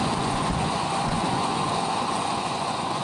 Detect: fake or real fake